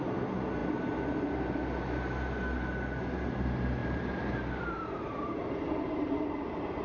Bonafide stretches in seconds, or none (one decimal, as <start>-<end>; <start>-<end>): 0.0-3.8; 5.5-6.8